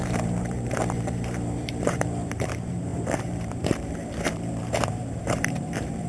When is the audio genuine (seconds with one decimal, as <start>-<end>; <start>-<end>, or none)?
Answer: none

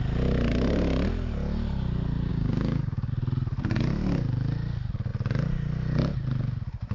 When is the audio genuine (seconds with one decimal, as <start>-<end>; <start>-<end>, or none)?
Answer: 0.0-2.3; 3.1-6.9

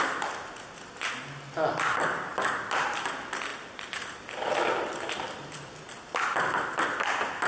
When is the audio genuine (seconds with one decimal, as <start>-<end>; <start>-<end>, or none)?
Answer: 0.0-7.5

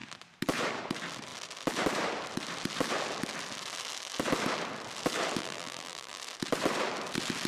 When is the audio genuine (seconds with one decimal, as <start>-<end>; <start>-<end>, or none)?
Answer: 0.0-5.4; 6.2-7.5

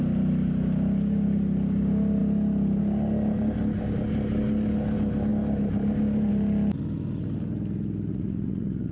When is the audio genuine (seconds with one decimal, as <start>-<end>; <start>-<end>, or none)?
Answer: 0.0-8.1

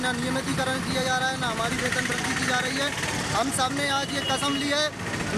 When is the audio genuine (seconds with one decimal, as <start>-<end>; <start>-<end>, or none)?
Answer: 0.0-5.4

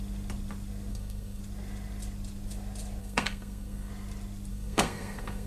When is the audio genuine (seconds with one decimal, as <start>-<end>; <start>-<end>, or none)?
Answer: 0.0-0.9; 1.4-3.0; 3.9-4.5

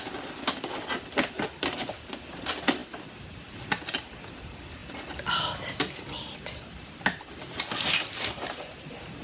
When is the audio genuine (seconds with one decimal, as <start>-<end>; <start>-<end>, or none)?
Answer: 0.0-9.2